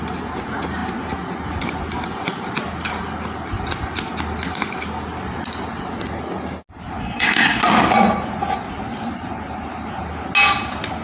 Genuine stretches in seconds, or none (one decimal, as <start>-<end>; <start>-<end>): 0.0-7.0; 7.6-11.0